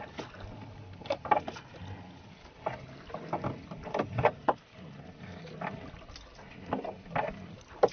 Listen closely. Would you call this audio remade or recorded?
recorded